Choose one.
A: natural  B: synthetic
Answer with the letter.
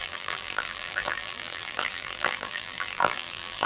B